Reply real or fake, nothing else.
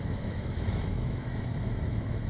fake